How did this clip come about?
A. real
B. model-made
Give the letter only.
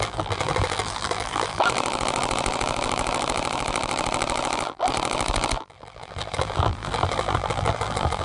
B